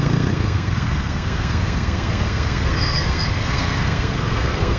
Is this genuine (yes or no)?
no